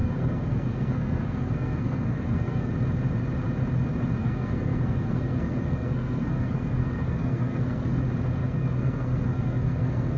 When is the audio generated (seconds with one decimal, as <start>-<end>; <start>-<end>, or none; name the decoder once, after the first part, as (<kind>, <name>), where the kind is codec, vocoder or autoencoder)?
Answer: 0.0-2.7 (codec, SNAC); 4.2-8.0; 8.4-10.2